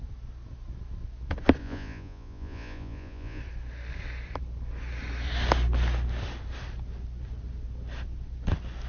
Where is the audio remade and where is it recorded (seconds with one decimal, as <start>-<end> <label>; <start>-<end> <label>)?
0.0-1.6 recorded; 1.6-3.4 remade; 3.4-8.9 recorded